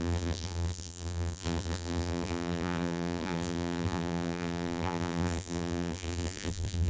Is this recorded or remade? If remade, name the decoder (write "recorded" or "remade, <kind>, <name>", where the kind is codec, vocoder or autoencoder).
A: remade, vocoder, BigVGAN v2